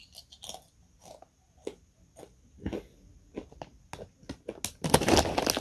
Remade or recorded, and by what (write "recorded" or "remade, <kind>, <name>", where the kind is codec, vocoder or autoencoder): recorded